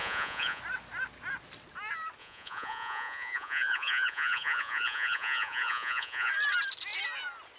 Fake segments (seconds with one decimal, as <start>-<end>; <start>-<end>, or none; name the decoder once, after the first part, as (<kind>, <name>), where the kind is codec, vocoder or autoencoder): 0.0-0.6 (vocoder, Vocos); 2.2-6.3